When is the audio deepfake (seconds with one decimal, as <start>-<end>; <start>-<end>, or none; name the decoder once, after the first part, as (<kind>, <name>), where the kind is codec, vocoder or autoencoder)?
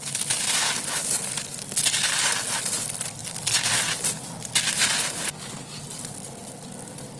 none